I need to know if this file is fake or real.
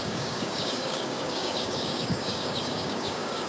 fake